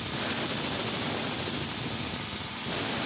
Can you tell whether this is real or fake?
real